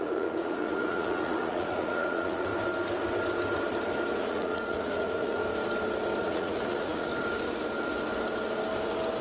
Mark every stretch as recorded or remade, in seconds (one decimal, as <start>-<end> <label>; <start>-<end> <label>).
0.0-2.5 remade; 2.5-4.2 recorded; 4.2-5.4 remade; 5.4-6.2 recorded; 6.2-7.1 remade; 7.1-9.2 recorded